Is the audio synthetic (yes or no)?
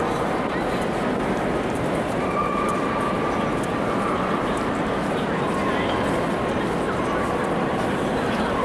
no